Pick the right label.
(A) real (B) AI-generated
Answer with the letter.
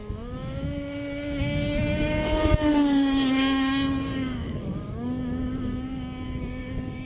B